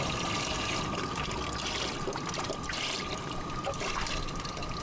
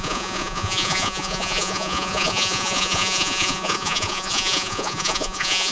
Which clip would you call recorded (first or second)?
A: first